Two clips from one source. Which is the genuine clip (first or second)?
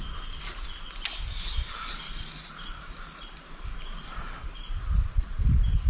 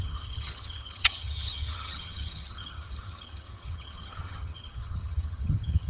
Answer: first